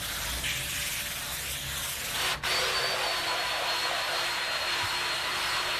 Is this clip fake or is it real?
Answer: real